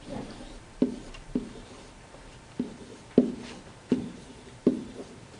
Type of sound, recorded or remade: remade